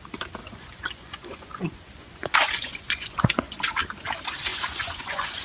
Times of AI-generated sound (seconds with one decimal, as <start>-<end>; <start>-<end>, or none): 0.4-3.6; 4.5-5.4